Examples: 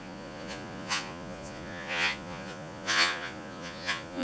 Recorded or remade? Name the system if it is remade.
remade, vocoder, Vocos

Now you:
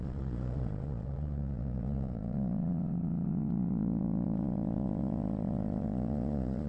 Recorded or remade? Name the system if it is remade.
remade, vocoder, Vocos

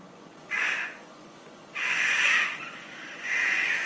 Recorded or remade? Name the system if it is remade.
remade, vocoder, Vocos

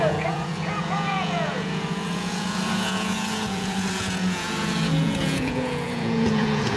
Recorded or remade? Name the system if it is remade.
remade, vocoder, Vocos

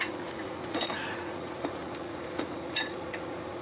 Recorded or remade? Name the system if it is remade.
remade, vocoder, Vocos